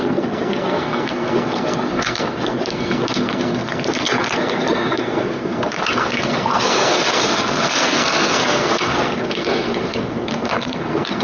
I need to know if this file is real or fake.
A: fake